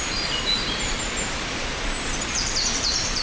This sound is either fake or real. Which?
fake